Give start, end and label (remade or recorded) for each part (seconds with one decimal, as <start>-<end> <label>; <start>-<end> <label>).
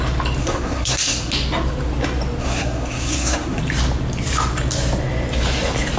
0.0-0.4 recorded; 0.4-1.3 remade; 1.3-2.4 recorded; 2.4-3.6 remade; 3.6-6.0 recorded